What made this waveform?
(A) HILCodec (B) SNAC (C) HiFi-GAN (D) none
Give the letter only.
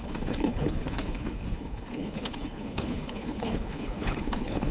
A